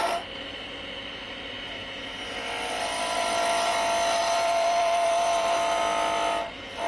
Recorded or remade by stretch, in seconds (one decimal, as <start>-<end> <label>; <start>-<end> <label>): 0.0-4.2 recorded; 4.2-5.8 remade; 5.8-6.9 recorded